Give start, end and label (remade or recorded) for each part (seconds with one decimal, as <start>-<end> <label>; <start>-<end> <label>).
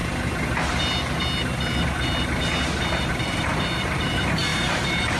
0.0-3.1 recorded; 3.1-5.2 remade